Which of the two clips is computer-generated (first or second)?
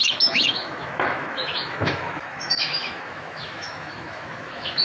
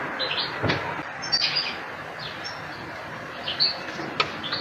first